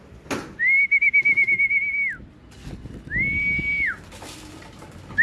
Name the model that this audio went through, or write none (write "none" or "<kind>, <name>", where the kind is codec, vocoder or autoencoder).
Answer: none